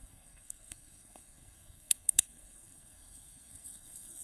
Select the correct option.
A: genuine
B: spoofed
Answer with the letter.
B